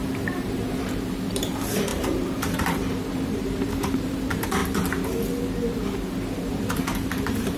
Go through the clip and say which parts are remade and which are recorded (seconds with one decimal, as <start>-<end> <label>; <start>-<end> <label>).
0.0-4.6 remade; 4.6-6.5 recorded; 6.5-7.6 remade